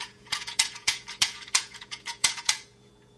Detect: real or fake fake